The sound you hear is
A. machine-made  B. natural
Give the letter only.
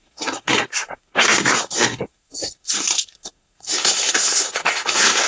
A